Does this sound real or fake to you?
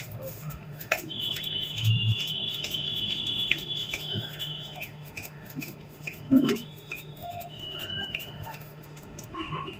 fake